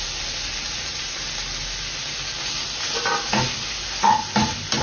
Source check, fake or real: real